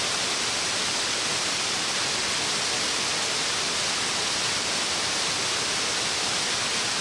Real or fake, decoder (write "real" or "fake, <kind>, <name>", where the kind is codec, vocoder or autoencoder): real